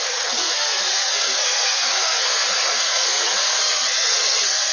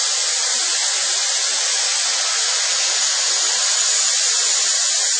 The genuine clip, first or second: second